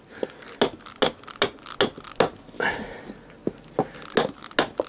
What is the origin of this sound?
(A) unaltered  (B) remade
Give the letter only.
A